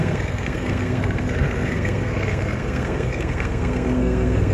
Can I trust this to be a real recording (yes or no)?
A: no